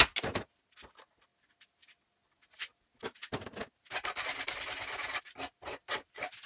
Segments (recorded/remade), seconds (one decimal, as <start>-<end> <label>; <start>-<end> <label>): 0.0-6.5 recorded